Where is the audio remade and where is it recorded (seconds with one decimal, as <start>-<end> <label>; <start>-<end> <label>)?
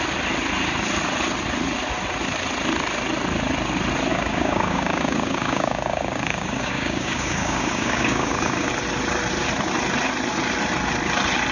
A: 0.0-4.1 recorded; 4.1-8.7 remade; 8.7-11.5 recorded